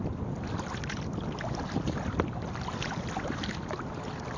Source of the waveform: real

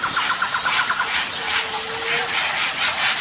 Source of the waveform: real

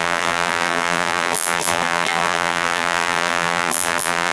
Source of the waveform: fake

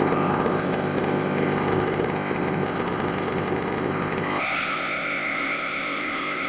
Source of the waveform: fake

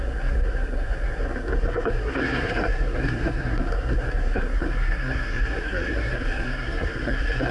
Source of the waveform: fake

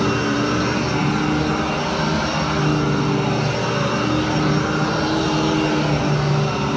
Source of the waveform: real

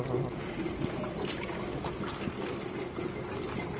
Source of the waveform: real